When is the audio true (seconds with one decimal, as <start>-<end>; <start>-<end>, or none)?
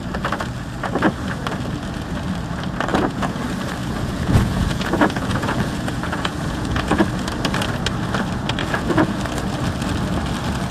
0.0-2.9; 3.4-3.8; 7.0-8.6; 9.2-10.7